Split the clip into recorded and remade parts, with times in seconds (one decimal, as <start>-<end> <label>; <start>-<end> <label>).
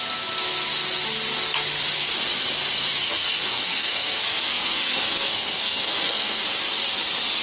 0.0-3.0 recorded; 3.0-6.4 remade; 6.4-7.4 recorded